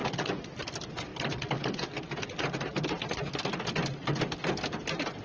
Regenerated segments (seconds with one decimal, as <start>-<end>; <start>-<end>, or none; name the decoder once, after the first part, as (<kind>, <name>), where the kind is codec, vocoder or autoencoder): none